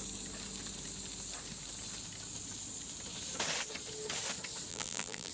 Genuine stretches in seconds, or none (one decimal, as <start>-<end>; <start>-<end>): 0.0-4.7